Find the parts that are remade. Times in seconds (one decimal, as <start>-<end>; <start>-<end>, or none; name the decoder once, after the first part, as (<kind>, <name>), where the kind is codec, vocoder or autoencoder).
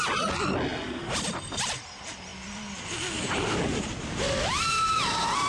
none